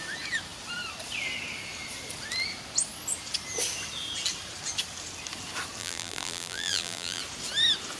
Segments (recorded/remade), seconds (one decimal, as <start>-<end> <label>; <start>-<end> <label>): 0.0-5.8 recorded; 5.8-7.2 remade; 7.2-8.0 recorded